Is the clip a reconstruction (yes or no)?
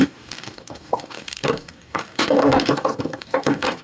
yes